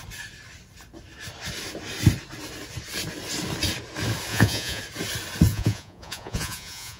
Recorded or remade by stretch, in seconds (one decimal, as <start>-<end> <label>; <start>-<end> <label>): 0.0-4.3 recorded; 4.3-4.8 remade; 4.8-5.5 recorded; 5.5-7.0 remade